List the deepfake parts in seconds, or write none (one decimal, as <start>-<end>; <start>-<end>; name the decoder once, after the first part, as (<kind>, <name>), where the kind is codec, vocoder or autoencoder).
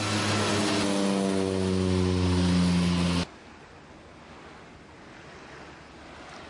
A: none